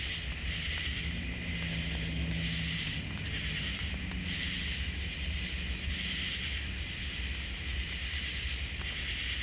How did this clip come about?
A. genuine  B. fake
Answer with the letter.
A